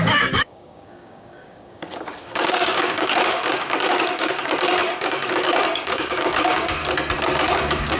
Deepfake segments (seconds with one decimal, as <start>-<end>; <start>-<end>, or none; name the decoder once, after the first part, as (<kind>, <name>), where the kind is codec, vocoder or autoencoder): 0.0-6.8 (codec, DAC); 7.5-8.0